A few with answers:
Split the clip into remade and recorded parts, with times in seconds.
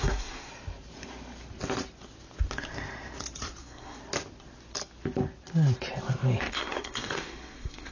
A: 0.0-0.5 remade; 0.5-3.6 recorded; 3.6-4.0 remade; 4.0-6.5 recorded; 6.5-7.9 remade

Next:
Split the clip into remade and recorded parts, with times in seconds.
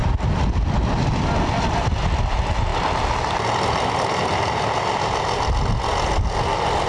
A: 0.0-6.9 recorded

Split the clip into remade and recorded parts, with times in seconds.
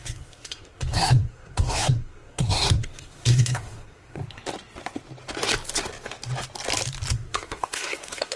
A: 0.0-4.2 remade; 4.2-7.1 recorded; 7.1-8.4 remade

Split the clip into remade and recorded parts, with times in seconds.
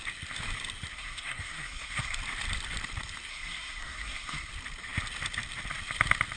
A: 0.0-0.9 recorded; 0.9-2.2 remade; 2.2-3.3 recorded; 3.3-4.5 remade; 4.5-6.4 recorded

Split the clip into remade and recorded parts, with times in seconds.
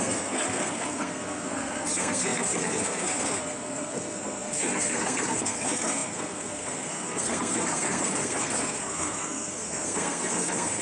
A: 0.0-10.8 remade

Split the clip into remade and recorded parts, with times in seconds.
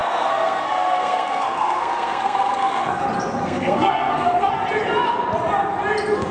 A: 0.0-3.0 remade; 3.0-3.4 recorded; 3.4-4.5 remade; 4.5-6.3 recorded